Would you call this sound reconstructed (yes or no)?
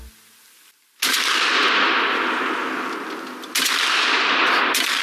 no